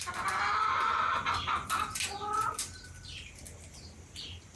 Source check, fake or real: real